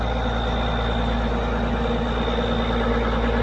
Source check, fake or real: real